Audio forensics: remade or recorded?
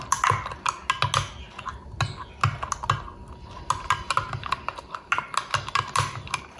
recorded